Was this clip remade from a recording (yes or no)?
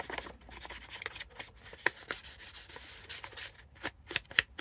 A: no